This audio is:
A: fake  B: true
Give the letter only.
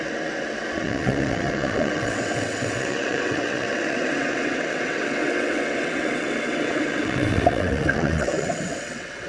A